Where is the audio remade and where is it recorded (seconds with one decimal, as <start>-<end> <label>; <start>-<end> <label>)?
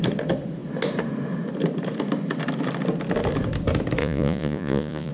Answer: 0.0-4.0 recorded; 4.0-5.1 remade